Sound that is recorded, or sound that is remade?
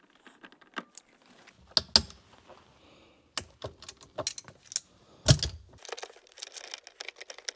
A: recorded